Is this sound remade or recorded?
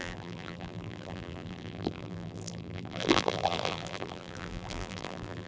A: remade